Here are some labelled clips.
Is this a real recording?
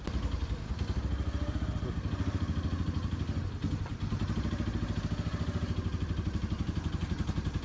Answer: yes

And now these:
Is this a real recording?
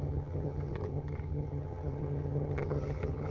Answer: no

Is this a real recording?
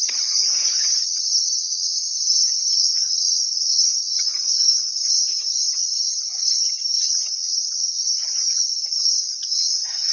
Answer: no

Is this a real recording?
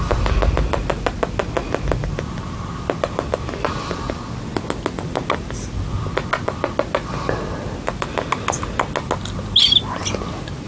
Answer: yes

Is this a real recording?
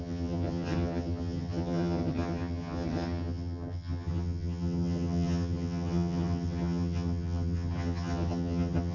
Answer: no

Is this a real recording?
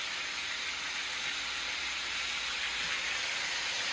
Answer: yes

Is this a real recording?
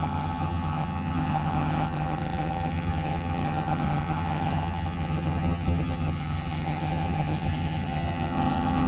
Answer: no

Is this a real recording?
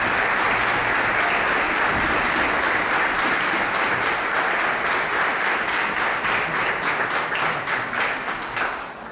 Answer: yes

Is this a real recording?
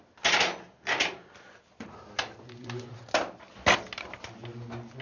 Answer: yes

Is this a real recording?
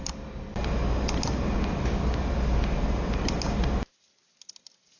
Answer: yes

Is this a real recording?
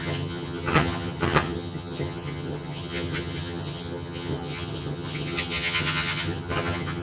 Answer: no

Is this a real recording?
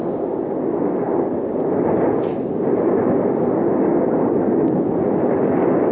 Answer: yes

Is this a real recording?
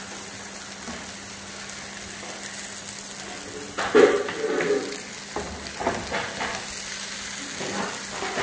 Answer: yes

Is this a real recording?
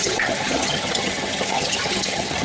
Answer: no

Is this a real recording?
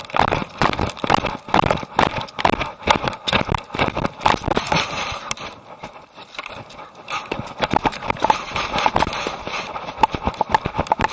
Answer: yes